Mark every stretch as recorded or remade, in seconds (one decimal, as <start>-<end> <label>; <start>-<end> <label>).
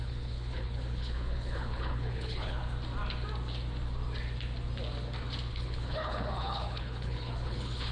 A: 0.0-2.6 remade; 2.6-5.5 recorded; 5.5-7.9 remade